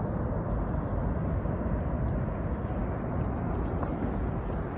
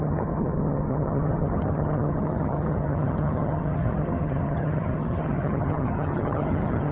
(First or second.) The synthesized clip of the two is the second